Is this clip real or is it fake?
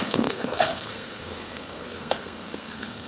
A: fake